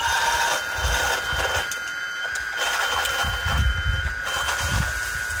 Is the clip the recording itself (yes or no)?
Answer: yes